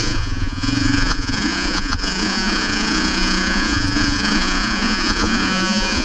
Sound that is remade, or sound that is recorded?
remade